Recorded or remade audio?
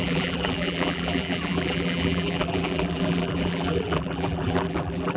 remade